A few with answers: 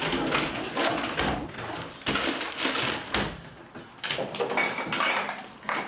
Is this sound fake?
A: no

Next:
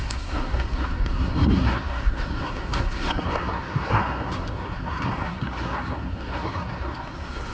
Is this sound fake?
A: yes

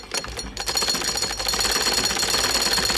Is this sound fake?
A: no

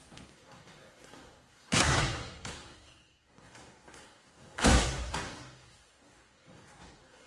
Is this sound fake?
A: yes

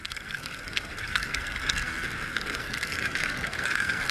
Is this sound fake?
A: yes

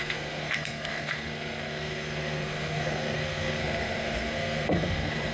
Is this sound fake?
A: yes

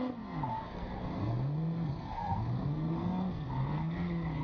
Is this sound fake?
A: yes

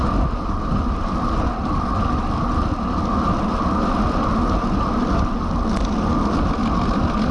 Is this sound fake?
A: no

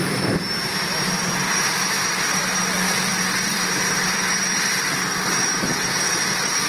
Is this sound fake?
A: no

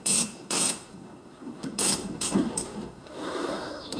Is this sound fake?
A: yes